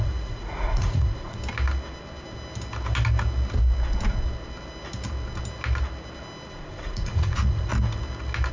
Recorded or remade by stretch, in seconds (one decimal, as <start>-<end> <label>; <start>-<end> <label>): 0.0-1.4 remade; 1.4-6.5 recorded; 6.5-7.7 remade; 7.7-8.5 recorded